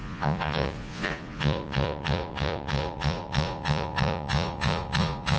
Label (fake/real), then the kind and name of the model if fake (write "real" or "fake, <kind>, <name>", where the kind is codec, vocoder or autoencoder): fake, vocoder, Vocos